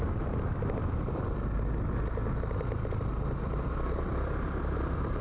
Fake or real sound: fake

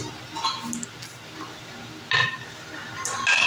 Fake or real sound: real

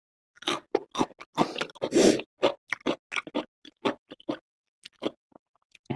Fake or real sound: real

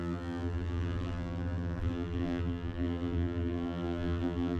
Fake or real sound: fake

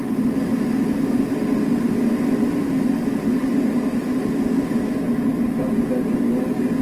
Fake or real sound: real